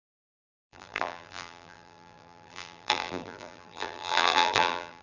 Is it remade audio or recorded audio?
remade